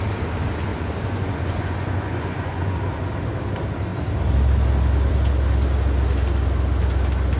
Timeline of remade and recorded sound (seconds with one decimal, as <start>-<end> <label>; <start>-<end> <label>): 0.0-0.7 recorded; 0.7-2.8 remade; 2.8-7.4 recorded